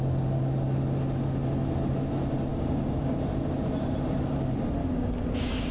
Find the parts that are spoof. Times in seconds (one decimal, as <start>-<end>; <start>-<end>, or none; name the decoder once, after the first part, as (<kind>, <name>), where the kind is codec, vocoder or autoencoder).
2.5-3.2 (codec, DAC); 4.8-5.7